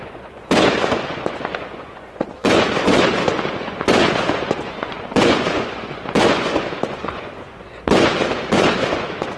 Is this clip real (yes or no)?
no